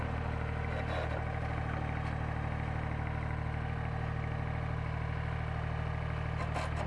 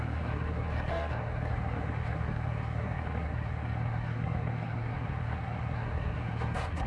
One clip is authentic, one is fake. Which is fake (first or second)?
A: second